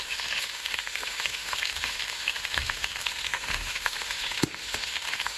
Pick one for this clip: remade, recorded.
remade